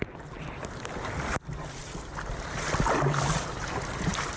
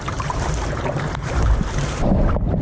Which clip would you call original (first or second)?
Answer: first